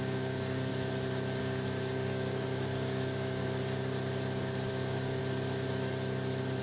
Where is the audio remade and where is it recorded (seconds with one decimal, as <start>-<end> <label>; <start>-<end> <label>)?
0.0-0.7 remade; 0.7-1.4 recorded; 1.4-3.4 remade; 3.4-4.7 recorded; 4.7-5.2 remade; 5.2-6.6 recorded

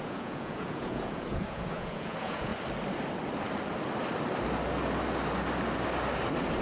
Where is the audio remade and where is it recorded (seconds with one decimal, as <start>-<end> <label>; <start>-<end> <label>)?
0.0-2.5 remade; 2.5-6.6 recorded

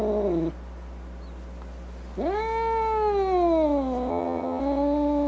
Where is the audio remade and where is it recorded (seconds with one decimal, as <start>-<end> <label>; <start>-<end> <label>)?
0.0-4.1 recorded; 4.1-4.6 remade; 4.6-5.3 recorded

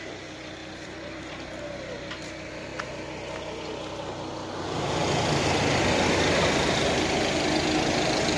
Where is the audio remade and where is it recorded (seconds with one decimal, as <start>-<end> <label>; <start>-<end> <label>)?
0.0-0.6 recorded; 0.6-1.2 remade; 1.2-8.4 recorded

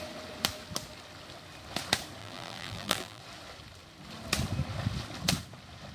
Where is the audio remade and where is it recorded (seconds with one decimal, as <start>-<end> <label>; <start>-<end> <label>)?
0.0-2.2 recorded; 2.2-3.2 remade; 3.2-5.9 recorded

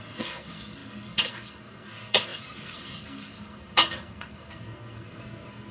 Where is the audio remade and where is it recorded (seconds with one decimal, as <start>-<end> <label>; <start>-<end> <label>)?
0.0-5.7 remade

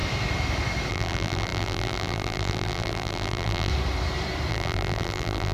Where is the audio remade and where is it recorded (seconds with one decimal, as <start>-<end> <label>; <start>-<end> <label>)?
0.0-0.9 recorded; 0.9-3.7 remade; 3.7-4.5 recorded; 4.5-5.5 remade